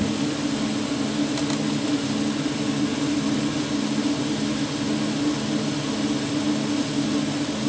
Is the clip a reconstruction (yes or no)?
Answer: no